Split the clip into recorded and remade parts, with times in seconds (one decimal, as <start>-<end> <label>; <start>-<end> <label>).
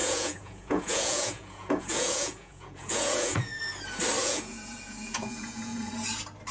0.0-3.6 remade; 3.6-4.2 recorded; 4.2-5.9 remade; 5.9-6.5 recorded